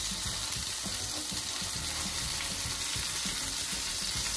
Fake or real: real